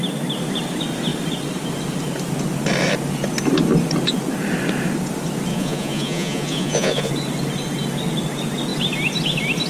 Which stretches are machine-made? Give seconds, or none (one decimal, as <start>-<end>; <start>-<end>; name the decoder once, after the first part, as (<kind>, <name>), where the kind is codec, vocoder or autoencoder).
5.5-7.1 (vocoder, Vocos)